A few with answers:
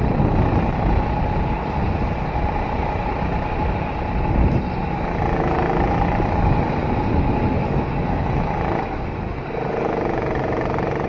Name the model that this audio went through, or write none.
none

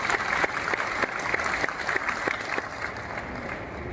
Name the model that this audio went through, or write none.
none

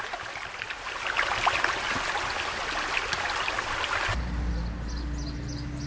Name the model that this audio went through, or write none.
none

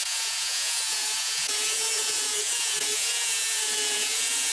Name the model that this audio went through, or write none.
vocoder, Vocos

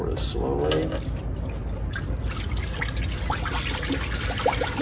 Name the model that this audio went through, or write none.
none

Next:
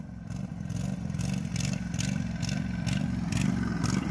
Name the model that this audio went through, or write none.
none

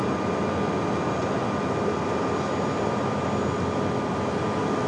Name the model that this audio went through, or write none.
none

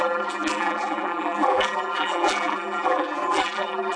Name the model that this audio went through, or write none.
vocoder, BigVGAN v2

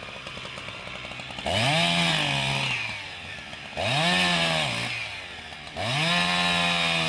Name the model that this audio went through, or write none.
none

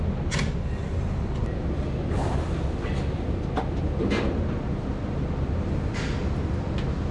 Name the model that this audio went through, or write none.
none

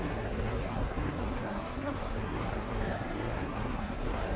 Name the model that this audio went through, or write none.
codec, SNAC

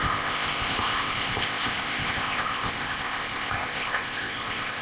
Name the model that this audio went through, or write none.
codec, ZipCodec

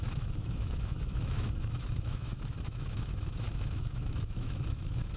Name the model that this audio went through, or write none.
autoencoder, DAC-VAE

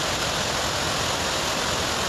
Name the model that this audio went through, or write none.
none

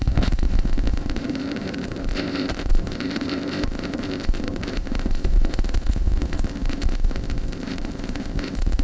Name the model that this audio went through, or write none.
codec, ZipCodec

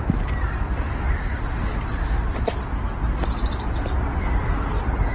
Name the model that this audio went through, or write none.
none